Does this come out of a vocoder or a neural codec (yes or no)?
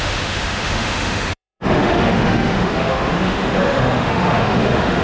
yes